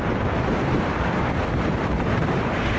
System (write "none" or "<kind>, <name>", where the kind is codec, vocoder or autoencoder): vocoder, BigVGAN v2